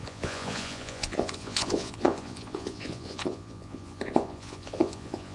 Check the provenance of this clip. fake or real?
fake